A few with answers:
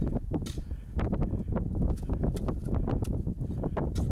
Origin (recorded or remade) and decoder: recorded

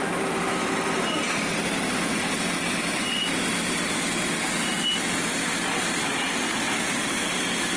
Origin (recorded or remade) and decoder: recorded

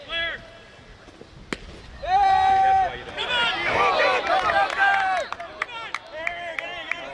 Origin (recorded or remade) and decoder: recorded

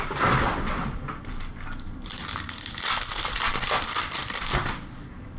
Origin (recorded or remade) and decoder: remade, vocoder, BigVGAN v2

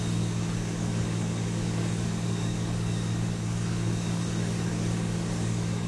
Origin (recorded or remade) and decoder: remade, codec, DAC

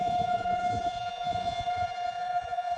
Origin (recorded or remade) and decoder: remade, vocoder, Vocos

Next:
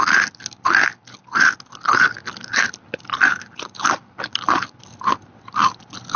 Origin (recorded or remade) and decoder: recorded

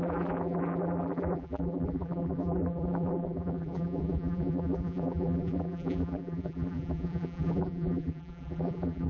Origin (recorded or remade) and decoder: remade, vocoder, BigVGAN v2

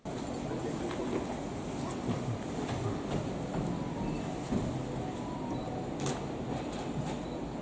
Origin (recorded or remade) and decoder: recorded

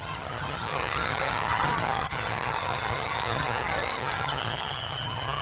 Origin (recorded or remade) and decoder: remade, vocoder, HiFi-GAN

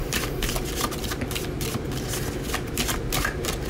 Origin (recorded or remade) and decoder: recorded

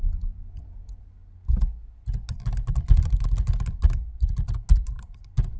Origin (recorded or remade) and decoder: recorded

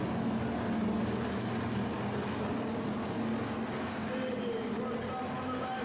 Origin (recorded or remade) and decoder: recorded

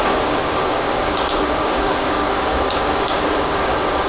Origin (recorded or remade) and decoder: remade, codec, DAC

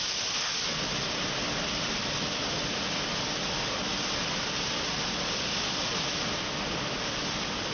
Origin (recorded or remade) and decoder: recorded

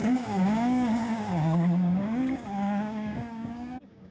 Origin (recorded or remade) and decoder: remade, codec, DAC